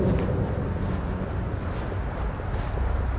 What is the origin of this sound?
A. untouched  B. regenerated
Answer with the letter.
A